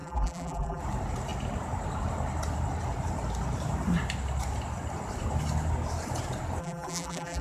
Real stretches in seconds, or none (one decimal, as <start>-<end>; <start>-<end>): 0.8-6.6